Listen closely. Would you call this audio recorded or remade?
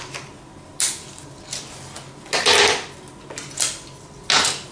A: recorded